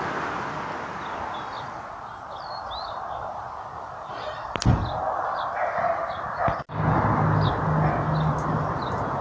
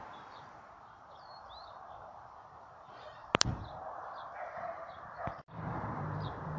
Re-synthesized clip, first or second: second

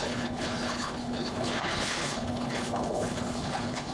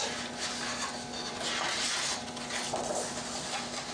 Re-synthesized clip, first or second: first